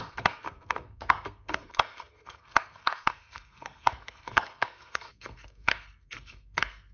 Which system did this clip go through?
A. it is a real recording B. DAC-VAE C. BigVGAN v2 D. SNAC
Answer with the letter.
D